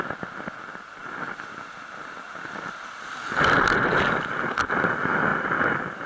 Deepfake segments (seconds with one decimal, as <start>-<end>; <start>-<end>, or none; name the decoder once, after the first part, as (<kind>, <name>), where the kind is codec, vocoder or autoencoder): 0.0-1.0 (vocoder, BigVGAN v2); 3.8-6.1